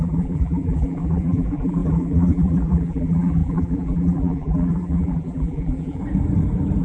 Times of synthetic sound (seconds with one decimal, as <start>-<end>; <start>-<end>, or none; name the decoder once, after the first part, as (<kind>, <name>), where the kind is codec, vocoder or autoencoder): 0.0-6.0 (vocoder, BigVGAN v2)